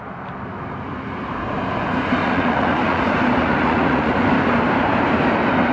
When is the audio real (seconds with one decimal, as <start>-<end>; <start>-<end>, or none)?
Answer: 0.0-2.2; 3.0-3.4; 4.2-5.7